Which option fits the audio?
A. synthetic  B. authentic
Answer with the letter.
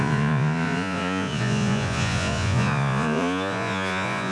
A